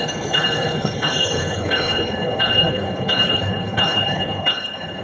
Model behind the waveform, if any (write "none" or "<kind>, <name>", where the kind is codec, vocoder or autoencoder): codec, HILCodec